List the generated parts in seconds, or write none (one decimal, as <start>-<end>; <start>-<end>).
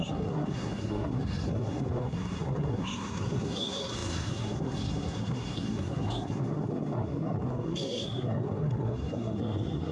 0.0-9.9